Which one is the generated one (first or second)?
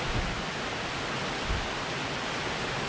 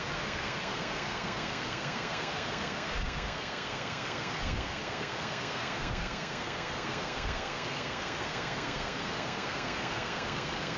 second